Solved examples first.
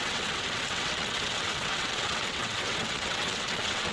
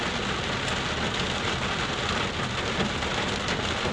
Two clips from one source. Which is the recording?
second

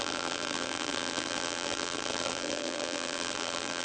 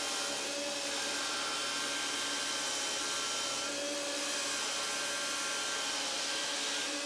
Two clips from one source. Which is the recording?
second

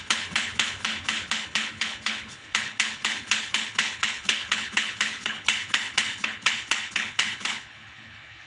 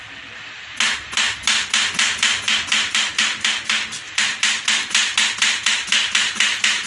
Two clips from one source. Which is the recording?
second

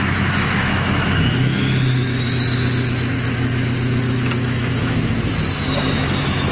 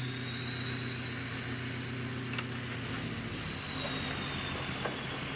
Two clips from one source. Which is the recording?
second